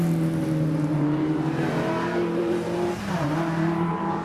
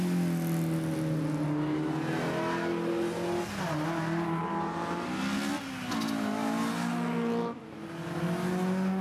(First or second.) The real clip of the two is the second